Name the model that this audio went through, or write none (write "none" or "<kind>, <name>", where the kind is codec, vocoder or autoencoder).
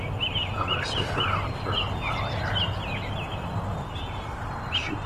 none